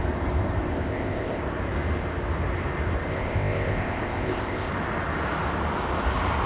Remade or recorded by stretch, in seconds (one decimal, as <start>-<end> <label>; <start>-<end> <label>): 0.0-0.7 recorded; 0.7-1.4 remade; 1.4-3.1 recorded; 3.1-4.7 remade; 4.7-6.5 recorded